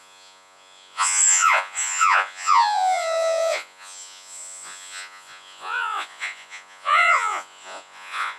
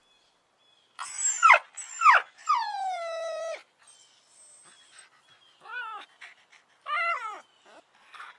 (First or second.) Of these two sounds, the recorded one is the second